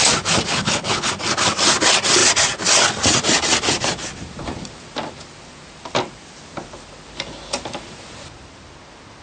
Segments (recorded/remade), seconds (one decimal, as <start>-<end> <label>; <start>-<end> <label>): 0.0-0.5 recorded; 0.5-1.1 remade; 1.1-9.2 recorded